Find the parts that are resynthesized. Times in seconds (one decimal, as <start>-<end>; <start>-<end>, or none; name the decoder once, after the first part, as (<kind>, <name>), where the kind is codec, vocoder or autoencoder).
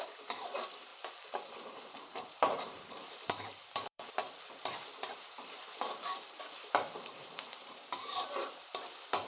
0.0-0.9 (vocoder, BigVGAN v2); 1.8-9.3